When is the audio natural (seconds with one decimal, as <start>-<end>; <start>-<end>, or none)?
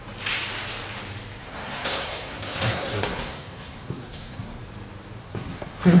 0.0-1.4; 4.6-5.2